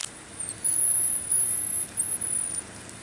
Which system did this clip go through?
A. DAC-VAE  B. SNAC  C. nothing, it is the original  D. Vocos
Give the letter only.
C